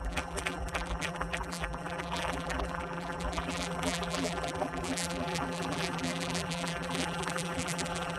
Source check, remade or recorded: remade